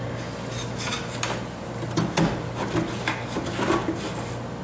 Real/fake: real